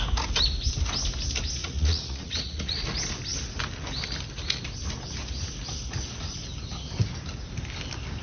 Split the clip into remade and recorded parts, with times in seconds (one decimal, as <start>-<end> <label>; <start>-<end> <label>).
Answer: 0.0-1.6 recorded; 1.6-2.9 remade; 2.9-8.2 recorded